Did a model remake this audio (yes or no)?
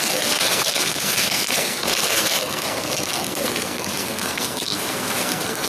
yes